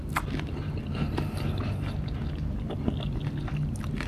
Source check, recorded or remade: recorded